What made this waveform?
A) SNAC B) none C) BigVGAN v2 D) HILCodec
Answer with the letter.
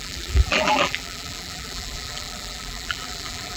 C